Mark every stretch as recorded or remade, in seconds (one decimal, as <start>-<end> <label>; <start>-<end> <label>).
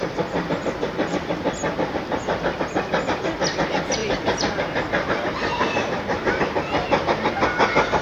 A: 0.0-4.0 recorded; 4.0-6.4 remade; 6.4-8.0 recorded